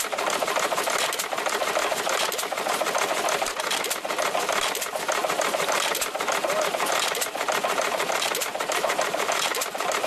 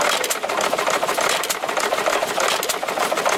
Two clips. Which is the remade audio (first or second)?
first